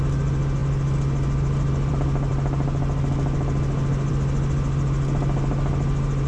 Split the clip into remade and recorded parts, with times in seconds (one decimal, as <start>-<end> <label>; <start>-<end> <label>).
0.0-6.3 recorded